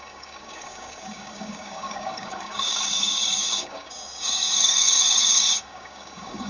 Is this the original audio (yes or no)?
no